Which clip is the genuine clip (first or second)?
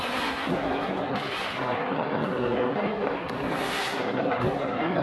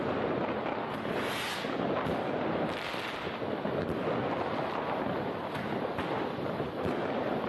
second